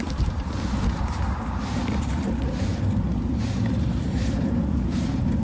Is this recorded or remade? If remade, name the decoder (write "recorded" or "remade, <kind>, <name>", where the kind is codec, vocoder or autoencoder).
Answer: remade, vocoder, BigVGAN v2